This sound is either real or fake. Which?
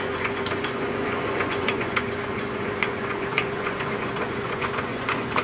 fake